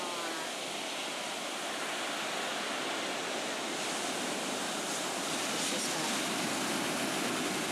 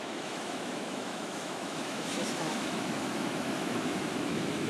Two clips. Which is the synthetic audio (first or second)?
second